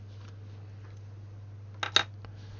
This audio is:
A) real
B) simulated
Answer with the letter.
A